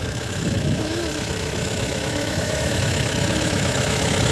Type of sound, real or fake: fake